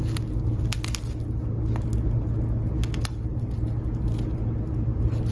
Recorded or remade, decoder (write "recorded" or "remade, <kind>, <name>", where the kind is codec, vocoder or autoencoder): recorded